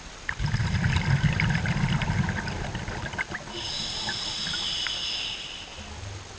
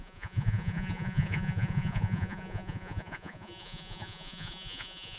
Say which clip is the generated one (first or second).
second